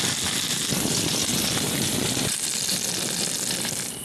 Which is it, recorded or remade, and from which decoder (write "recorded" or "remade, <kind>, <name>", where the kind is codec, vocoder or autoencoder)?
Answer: recorded